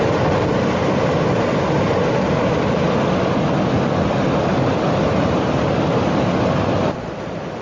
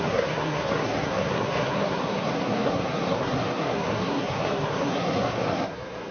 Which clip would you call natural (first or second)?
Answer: first